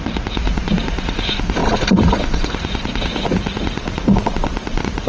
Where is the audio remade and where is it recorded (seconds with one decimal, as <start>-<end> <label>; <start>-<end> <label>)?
0.0-5.1 remade